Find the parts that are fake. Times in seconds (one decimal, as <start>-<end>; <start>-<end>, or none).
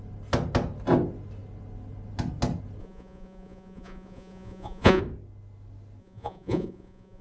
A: 2.8-5.0; 6.0-7.2